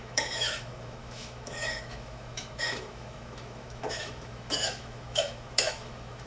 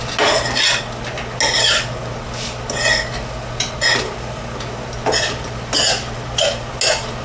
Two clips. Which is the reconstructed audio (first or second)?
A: first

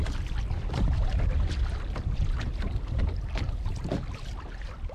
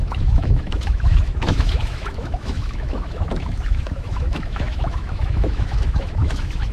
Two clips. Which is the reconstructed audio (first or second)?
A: second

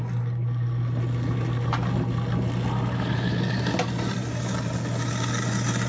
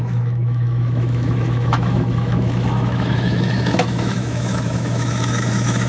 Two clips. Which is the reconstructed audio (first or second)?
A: second